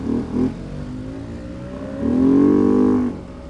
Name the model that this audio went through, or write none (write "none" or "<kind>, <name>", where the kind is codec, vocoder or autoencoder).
none